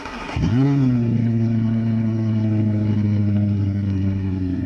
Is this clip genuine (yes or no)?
no